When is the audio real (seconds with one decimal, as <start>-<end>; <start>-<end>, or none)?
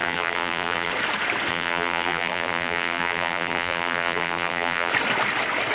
0.9-1.5; 4.9-5.7